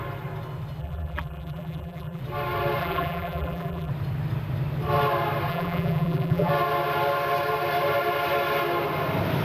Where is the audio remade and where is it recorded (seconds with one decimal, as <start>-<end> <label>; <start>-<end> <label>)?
0.0-0.8 recorded; 0.8-2.2 remade; 2.2-2.8 recorded; 2.8-3.9 remade; 3.9-5.5 recorded; 5.5-6.5 remade; 6.5-9.4 recorded